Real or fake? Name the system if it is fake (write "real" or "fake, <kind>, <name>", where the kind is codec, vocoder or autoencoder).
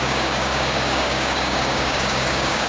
fake, codec, DAC